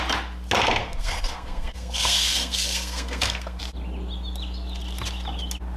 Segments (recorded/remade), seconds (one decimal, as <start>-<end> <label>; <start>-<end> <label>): 0.0-0.8 recorded; 0.8-3.6 remade; 3.6-5.8 recorded